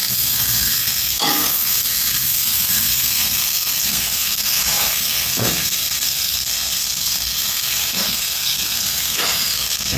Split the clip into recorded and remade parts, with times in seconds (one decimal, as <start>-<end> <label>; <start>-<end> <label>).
0.0-10.0 remade